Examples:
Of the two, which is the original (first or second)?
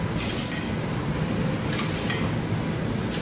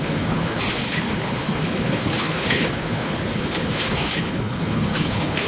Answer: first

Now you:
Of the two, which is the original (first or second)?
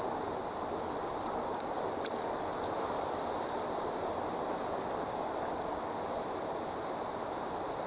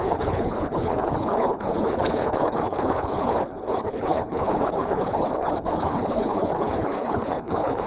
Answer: first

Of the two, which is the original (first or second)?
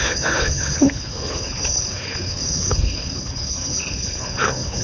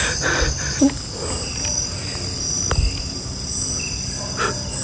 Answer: second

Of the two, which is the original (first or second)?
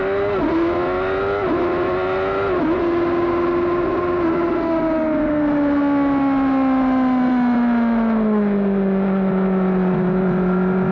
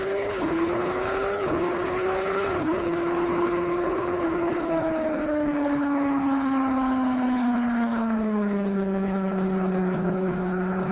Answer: first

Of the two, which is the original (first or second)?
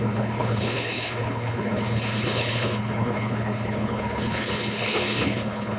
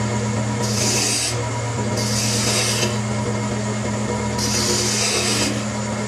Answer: second